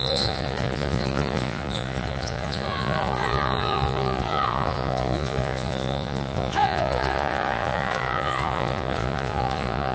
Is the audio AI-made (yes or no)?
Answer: yes